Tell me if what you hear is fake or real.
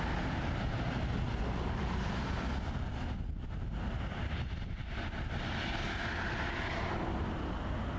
real